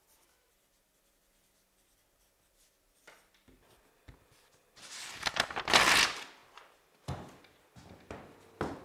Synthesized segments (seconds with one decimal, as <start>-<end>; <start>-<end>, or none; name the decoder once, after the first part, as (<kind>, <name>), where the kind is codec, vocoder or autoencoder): none